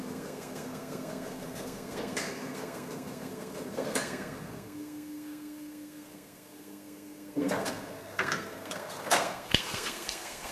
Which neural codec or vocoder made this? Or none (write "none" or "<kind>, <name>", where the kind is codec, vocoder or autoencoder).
codec, SNAC